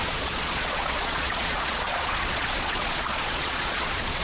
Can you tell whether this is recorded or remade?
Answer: remade